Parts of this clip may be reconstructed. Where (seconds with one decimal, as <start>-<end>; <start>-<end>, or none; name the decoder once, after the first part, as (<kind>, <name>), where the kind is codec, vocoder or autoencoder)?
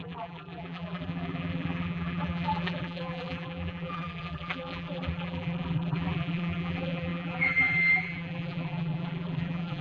0.0-9.8 (vocoder, BigVGAN v2)